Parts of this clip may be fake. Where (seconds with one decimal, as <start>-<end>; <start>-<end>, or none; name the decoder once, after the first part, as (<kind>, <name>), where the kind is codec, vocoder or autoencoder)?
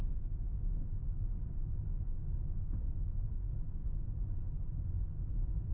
none